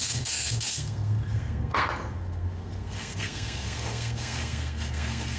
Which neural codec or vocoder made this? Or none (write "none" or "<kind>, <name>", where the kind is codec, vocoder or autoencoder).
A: codec, SNAC